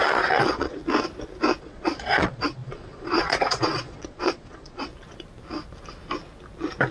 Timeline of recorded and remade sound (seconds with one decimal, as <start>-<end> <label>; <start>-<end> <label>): 0.0-0.8 remade; 0.8-1.6 recorded; 1.6-4.9 remade; 4.9-6.9 recorded